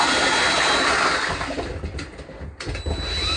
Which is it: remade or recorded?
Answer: recorded